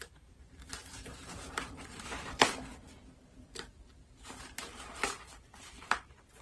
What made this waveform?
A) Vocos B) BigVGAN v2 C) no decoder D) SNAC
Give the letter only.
B